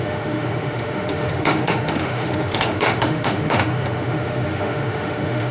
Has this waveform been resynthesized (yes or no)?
yes